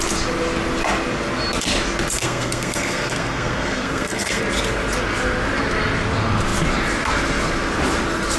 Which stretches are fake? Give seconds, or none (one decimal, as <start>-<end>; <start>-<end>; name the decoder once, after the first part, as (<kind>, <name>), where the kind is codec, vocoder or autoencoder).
2.2-4.4 (codec, SNAC)